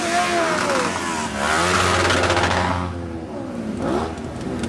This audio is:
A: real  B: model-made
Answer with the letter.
A